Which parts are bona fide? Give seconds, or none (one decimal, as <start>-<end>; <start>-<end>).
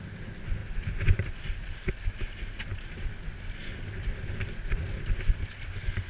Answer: 0.0-6.1